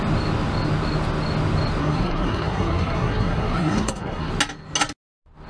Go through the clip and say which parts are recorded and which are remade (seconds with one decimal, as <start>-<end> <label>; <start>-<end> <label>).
0.0-1.8 recorded; 1.8-4.3 remade; 4.3-5.5 recorded